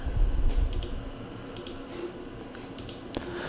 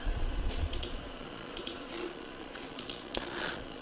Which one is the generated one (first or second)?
second